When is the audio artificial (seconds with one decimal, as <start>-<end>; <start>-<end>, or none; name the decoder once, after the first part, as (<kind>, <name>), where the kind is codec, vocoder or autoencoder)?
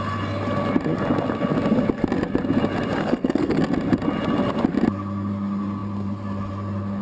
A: 3.0-3.6 (codec, SNAC)